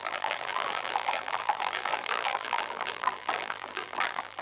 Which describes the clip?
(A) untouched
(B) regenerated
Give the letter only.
B